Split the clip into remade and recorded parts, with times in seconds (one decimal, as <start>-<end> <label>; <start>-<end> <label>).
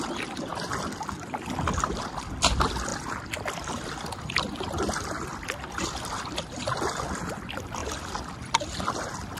0.0-9.4 recorded